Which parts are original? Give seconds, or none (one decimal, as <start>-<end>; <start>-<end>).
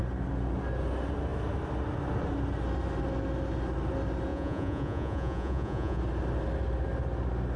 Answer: 0.0-4.3; 6.0-7.6